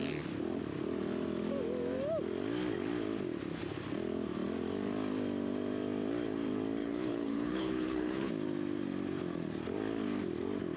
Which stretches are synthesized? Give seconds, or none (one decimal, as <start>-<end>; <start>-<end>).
6.8-8.3